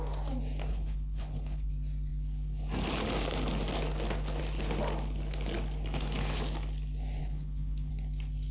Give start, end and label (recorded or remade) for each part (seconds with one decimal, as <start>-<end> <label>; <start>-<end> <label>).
0.0-0.7 recorded; 0.7-1.7 remade; 1.7-7.2 recorded; 7.2-7.9 remade; 7.9-8.5 recorded